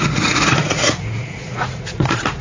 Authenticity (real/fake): fake